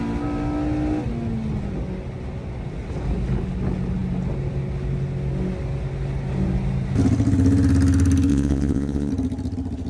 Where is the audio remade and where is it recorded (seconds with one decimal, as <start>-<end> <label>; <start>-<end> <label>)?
0.0-8.3 recorded; 8.3-9.1 remade; 9.1-9.9 recorded